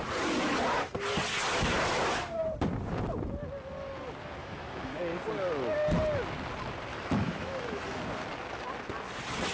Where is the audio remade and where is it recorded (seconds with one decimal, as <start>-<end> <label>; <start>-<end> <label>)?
0.0-4.4 recorded; 4.4-5.0 remade; 5.0-6.9 recorded; 6.9-8.0 remade; 8.0-9.5 recorded